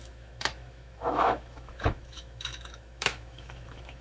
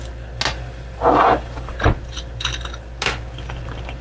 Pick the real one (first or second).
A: second